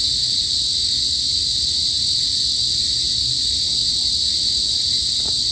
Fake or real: real